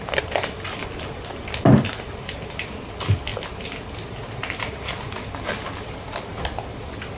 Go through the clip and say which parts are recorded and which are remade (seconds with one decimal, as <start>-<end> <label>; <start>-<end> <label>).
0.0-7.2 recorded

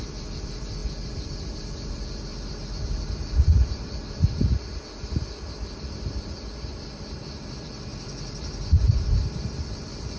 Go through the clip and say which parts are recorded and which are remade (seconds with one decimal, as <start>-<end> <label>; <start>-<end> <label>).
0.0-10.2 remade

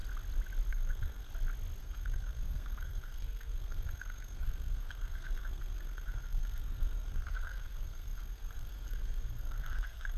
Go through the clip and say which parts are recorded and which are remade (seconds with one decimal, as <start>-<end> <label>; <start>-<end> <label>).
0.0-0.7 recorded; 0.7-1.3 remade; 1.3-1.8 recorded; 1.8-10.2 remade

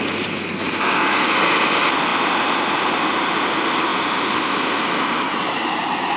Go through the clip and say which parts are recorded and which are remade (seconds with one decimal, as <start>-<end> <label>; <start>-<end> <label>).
0.0-6.2 recorded

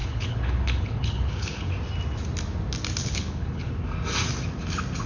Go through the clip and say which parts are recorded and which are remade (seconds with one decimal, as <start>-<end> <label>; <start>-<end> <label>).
0.0-1.7 remade; 1.7-3.0 recorded; 3.0-3.7 remade; 3.7-5.1 recorded

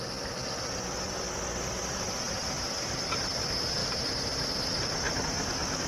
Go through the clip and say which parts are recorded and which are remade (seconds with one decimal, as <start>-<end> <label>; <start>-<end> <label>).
0.0-5.9 recorded

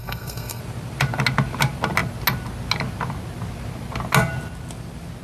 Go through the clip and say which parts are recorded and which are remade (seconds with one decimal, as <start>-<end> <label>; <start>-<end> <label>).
0.0-0.6 remade; 0.6-5.2 recorded

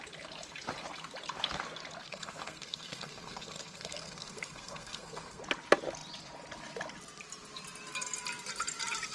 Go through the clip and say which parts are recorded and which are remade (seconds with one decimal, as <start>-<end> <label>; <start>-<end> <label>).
0.0-2.1 recorded; 2.1-5.4 remade; 5.4-9.1 recorded